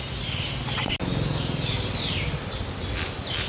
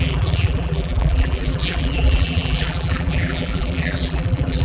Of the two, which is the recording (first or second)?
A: first